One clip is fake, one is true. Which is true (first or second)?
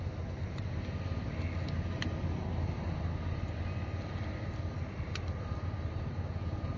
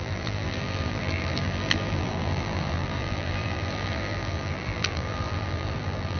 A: first